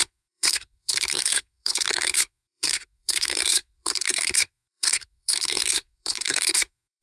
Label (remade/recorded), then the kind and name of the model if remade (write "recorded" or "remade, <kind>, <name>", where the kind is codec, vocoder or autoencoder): remade, codec, SNAC